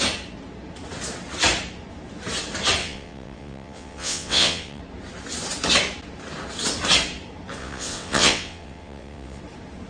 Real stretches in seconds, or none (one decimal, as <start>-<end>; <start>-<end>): 0.0-2.8; 4.8-7.6; 9.4-9.9